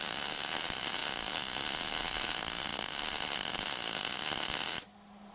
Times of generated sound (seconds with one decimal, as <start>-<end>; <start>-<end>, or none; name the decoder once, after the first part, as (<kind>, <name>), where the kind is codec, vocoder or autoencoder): none